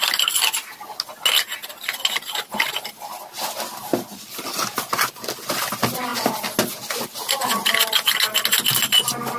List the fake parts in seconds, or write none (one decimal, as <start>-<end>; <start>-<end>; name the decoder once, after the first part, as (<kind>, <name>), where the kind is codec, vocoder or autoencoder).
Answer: none